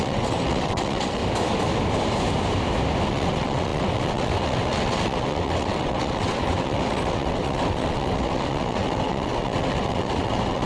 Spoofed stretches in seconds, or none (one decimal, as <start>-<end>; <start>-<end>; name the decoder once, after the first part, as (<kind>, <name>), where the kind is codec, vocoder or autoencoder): 0.0-1.2 (vocoder, WaveNeXt); 3.1-10.7

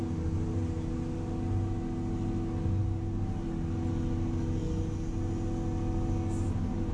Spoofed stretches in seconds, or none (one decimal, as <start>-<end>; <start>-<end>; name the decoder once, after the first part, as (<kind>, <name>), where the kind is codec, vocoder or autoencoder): none

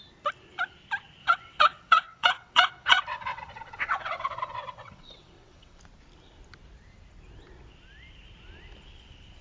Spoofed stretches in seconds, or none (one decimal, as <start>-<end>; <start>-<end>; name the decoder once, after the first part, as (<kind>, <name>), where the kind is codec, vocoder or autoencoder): 1.2-5.8 (vocoder, WaveNeXt)